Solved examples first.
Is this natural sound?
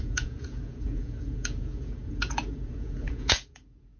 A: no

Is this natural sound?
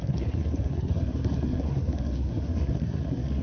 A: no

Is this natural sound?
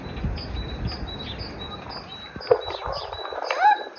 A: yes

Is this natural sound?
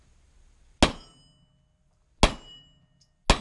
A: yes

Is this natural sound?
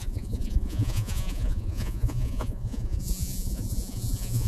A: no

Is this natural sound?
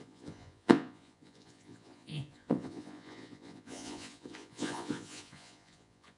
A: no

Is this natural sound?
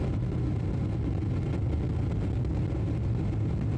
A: yes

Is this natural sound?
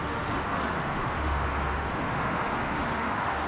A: no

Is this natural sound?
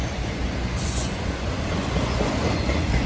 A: no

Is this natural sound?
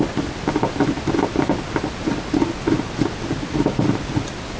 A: yes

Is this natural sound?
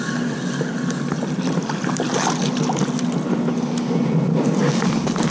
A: yes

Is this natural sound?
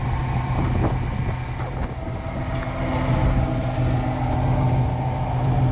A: yes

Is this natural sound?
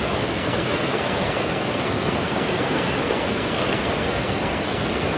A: no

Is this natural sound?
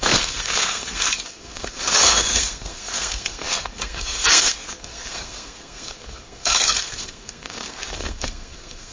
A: no